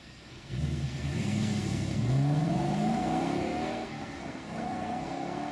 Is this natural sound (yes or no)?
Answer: no